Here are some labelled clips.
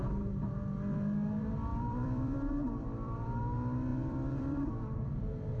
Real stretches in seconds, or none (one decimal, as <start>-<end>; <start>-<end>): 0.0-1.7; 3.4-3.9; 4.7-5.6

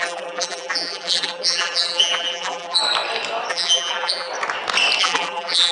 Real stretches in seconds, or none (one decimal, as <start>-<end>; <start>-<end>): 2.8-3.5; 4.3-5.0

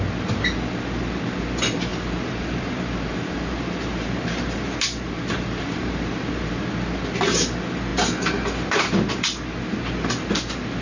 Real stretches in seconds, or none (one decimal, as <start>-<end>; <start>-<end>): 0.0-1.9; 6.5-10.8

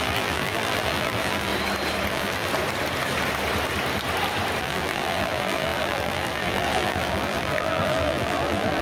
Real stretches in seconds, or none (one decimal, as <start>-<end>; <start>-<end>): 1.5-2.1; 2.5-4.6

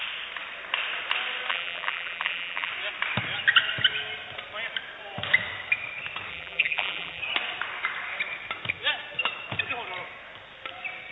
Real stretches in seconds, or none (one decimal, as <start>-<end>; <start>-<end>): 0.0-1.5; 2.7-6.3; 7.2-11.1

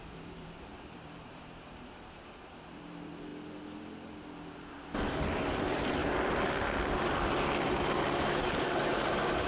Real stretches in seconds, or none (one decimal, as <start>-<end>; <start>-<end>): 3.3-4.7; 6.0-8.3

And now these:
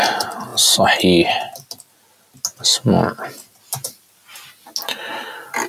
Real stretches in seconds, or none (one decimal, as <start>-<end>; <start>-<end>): 0.5-3.9; 4.3-5.7